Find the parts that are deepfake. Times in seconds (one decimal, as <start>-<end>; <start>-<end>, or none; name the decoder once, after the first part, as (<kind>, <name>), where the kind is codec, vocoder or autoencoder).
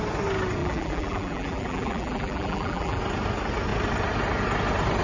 0.6-3.0 (vocoder, BigVGAN v2)